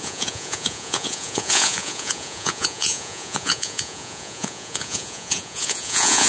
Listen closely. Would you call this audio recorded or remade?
remade